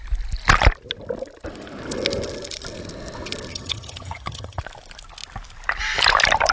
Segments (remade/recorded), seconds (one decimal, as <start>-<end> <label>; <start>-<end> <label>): 0.0-3.5 recorded; 3.5-4.6 remade; 4.6-6.5 recorded